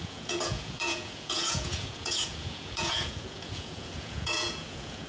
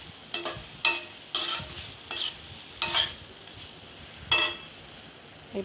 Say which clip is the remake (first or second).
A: first